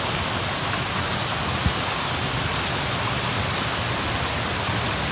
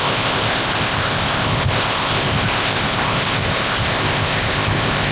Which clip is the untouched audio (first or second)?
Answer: first